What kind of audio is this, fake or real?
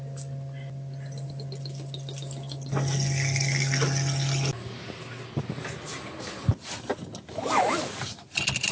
real